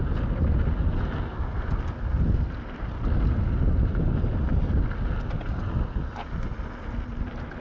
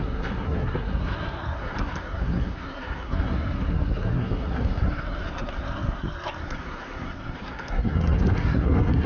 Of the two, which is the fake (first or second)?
second